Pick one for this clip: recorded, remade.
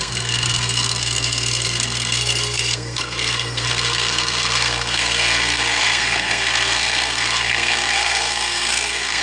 remade